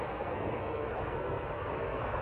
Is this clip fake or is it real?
fake